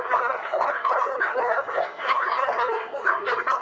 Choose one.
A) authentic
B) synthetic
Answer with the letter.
B